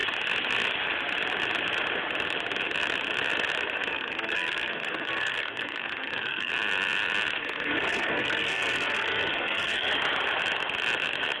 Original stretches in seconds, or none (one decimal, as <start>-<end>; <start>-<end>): 0.0-3.9; 6.5-7.4; 9.9-11.4